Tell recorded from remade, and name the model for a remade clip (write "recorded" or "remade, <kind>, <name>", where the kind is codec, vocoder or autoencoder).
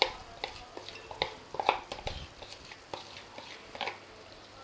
recorded